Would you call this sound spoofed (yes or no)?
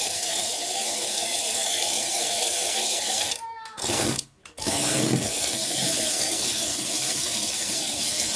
yes